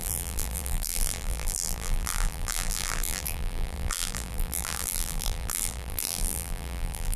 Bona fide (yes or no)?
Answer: no